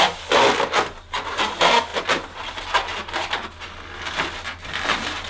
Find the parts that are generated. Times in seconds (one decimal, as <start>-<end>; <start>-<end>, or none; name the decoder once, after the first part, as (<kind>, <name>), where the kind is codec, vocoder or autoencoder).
none